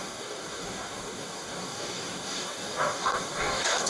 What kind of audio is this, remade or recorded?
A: remade